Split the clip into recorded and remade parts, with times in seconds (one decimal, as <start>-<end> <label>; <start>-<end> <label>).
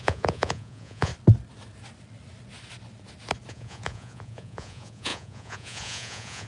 0.0-1.1 remade; 1.1-3.5 recorded; 3.5-6.5 remade